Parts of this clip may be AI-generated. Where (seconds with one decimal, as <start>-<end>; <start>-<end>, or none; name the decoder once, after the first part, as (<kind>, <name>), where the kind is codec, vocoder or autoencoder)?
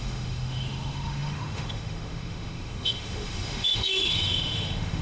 0.0-5.0 (autoencoder, DAC-VAE)